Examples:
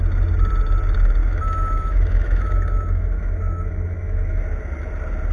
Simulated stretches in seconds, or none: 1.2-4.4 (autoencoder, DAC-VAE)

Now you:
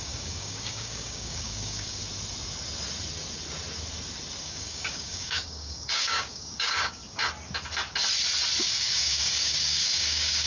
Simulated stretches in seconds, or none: 0.0-2.0 (codec, DAC); 4.4-7.0; 8.6-10.5

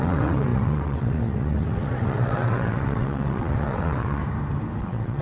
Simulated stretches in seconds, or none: 0.0-4.2 (vocoder, WaveNeXt); 4.8-5.2

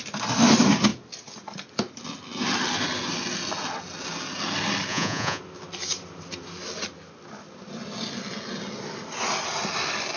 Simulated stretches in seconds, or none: 4.9-5.4 (vocoder, Vocos)

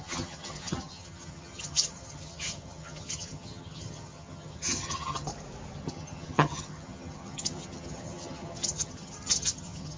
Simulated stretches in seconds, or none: 0.0-5.3 (vocoder, HiFi-GAN); 5.8-10.0

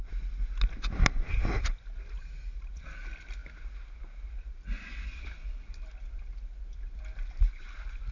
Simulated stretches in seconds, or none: none